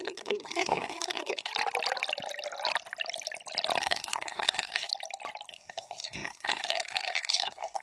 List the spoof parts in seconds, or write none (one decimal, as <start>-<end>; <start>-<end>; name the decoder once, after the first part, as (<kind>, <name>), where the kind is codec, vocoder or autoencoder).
0.0-1.5 (codec, SNAC); 3.8-4.9; 5.5-7.8